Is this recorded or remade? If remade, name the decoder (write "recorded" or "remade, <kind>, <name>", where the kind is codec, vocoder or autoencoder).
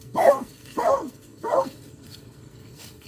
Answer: remade, codec, SNAC